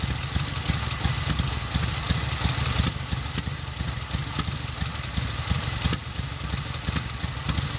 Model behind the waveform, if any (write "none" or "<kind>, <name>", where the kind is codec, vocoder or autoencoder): none